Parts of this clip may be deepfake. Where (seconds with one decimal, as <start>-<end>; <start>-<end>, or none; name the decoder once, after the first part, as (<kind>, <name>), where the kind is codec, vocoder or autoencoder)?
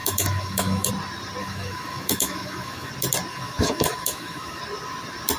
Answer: 0.0-0.9 (autoencoder, DAC-VAE); 1.4-2.9; 3.3-4.6